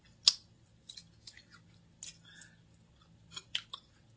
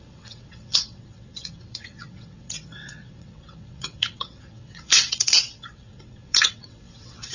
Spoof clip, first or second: second